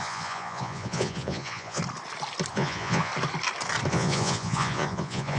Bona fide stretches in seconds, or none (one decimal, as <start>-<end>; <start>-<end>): 1.8-2.5; 3.1-3.9